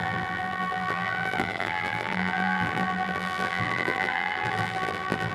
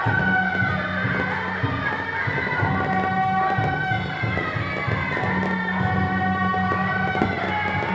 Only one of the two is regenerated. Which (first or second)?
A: first